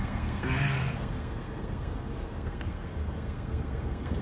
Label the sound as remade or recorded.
remade